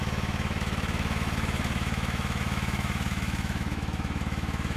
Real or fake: fake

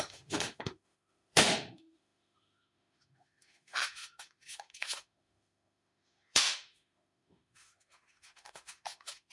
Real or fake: fake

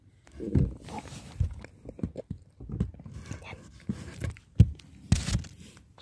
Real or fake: real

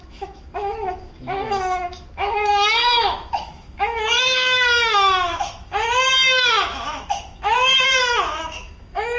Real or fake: fake